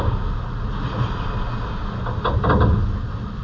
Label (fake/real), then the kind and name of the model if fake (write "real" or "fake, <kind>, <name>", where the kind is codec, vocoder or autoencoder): real